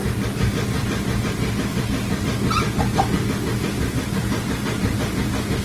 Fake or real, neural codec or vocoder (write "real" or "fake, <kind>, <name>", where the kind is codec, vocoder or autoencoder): real